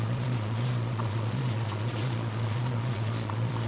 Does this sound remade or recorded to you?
remade